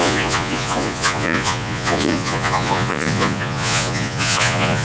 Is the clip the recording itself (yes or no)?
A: no